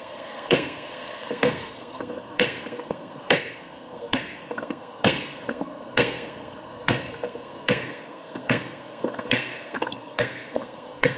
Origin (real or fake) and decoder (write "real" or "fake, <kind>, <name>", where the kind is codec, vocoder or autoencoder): fake, codec, SNAC